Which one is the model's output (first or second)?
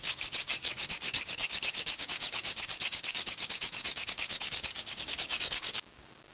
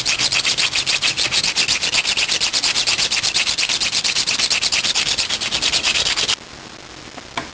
first